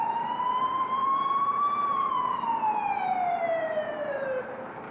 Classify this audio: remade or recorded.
remade